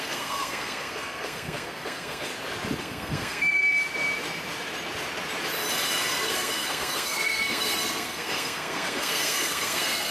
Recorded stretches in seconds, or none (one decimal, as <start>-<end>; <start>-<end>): 2.3-2.8; 3.8-6.1